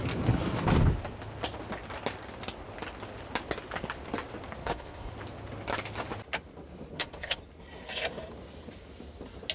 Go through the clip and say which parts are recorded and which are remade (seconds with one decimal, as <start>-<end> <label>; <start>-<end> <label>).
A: 0.0-4.6 recorded; 4.6-5.1 remade; 5.1-6.9 recorded; 6.9-7.4 remade; 7.4-9.5 recorded